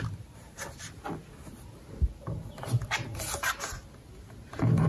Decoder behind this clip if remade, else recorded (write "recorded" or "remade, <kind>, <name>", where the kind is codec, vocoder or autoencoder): recorded